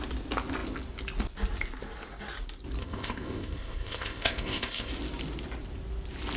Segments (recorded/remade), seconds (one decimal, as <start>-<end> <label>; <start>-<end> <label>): 0.0-2.8 recorded; 2.8-4.9 remade; 4.9-6.4 recorded